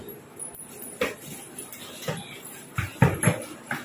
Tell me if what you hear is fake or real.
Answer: real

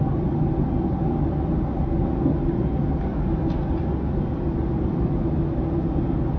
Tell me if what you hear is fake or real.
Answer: real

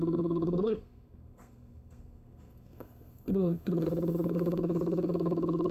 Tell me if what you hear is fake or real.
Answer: fake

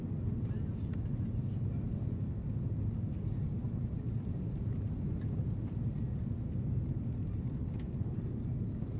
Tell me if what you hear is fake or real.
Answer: real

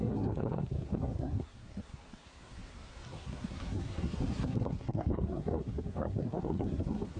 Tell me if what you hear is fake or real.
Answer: fake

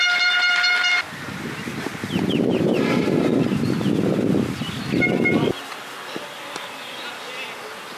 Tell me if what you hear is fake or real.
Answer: real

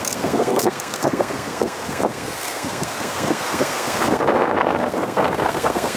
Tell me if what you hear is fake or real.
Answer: fake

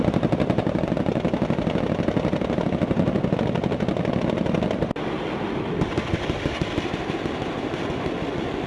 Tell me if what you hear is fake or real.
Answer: real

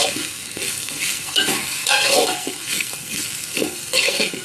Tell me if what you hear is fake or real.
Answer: fake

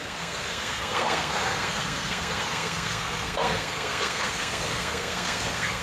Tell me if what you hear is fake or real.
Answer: fake